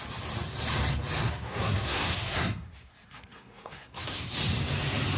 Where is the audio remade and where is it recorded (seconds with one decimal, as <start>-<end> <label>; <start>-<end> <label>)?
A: 0.0-1.2 recorded; 1.2-4.3 remade; 4.3-5.2 recorded